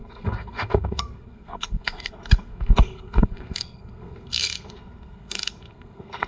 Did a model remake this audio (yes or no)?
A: yes